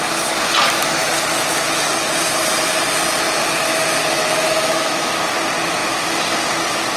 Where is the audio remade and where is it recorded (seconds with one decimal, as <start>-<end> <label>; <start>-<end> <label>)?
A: 0.0-3.4 recorded; 3.4-5.2 remade; 5.2-7.0 recorded